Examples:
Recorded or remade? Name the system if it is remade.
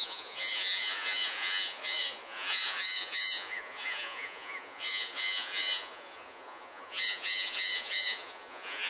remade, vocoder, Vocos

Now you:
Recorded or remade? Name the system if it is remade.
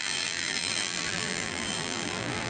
remade, vocoder, BigVGAN v2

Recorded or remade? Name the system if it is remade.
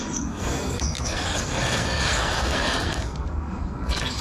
remade, codec, SNAC